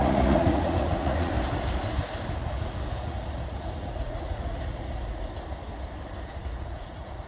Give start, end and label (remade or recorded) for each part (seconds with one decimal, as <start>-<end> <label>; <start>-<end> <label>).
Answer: 0.0-1.3 remade; 1.3-2.4 recorded; 2.4-5.2 remade; 5.2-6.3 recorded; 6.3-7.3 remade